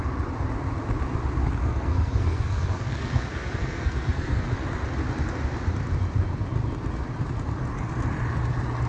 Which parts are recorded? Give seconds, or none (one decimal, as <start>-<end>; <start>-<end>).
0.0-1.6; 4.4-8.9